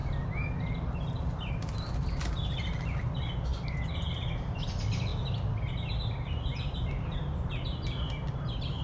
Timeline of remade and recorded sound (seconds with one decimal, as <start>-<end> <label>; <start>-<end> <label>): 0.0-8.8 recorded